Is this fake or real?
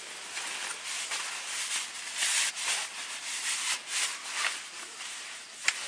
real